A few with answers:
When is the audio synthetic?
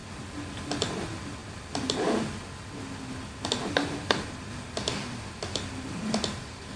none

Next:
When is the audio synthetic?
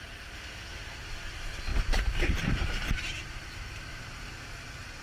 1.7-5.0 (vocoder, BigVGAN v2)